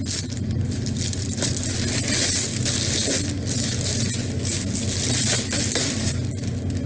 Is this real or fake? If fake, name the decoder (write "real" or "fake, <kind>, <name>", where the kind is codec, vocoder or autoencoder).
real